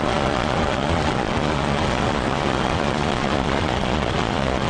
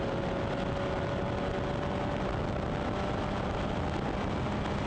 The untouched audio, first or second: second